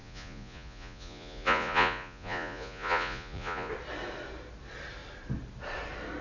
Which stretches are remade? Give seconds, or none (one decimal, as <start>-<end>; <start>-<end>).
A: 0.0-3.7